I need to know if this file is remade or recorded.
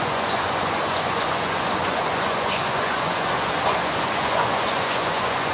remade